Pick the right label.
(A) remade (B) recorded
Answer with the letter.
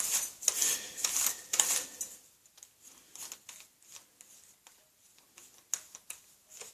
B